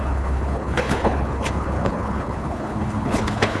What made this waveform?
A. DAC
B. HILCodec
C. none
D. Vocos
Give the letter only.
B